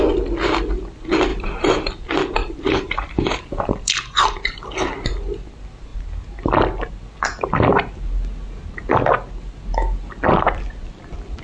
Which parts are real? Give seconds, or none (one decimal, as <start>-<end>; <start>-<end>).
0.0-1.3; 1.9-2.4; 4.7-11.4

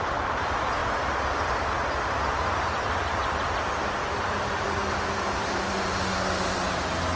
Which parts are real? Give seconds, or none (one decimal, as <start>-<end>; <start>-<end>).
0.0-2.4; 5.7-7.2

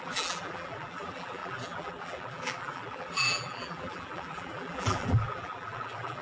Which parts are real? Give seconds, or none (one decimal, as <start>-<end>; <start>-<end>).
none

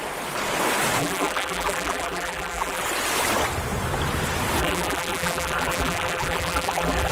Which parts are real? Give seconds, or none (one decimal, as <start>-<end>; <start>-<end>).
0.0-1.0; 2.8-4.6

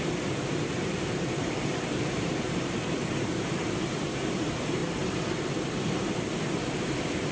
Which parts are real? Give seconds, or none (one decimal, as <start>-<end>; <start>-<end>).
4.8-6.3

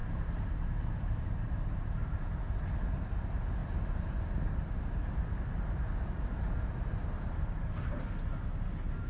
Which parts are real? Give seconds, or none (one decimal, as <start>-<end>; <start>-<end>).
2.4-3.6; 4.1-9.1

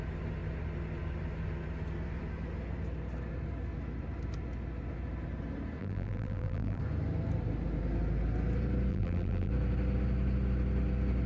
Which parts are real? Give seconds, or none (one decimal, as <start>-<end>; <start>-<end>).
0.0-5.8; 6.8-8.9; 9.5-11.3

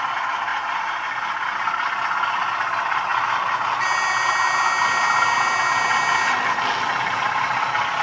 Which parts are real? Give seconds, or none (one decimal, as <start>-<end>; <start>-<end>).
0.0-8.0